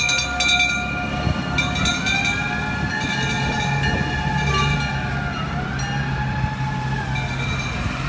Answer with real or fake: real